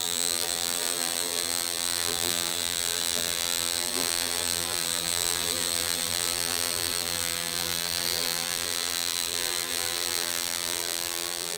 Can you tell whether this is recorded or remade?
remade